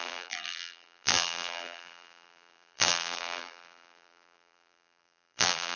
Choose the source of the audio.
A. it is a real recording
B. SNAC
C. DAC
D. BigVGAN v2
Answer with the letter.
D